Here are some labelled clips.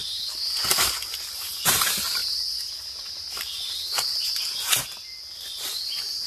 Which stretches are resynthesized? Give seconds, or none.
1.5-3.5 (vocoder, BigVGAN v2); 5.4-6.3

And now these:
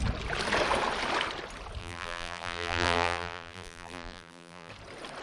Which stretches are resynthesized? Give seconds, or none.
1.8-4.7 (vocoder, BigVGAN v2)